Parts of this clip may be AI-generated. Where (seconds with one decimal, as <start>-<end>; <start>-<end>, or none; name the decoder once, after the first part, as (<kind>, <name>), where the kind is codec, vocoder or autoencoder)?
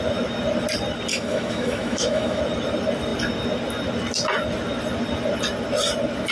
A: 1.1-2.4 (autoencoder, DAC-VAE)